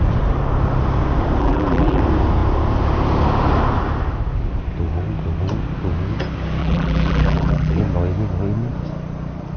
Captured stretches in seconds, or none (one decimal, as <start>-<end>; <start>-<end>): 0.0-1.4; 2.0-6.6; 7.8-9.6